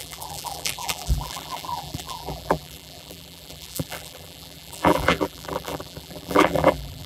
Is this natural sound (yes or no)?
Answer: no